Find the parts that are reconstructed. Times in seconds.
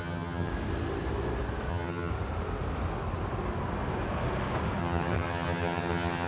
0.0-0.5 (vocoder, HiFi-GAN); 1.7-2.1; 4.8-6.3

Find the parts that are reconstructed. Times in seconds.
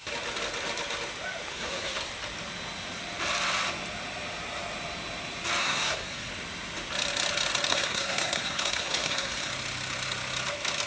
1.5-2.1 (codec, SNAC); 5.6-6.3; 7.7-9.5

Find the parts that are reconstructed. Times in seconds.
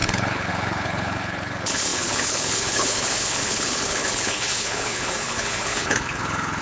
0.0-6.6 (codec, HILCodec)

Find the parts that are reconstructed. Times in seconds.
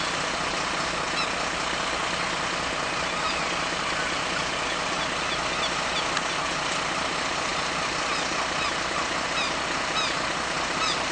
none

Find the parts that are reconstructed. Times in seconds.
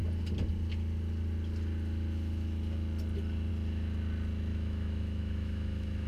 4.5-6.1 (autoencoder, DAC-VAE)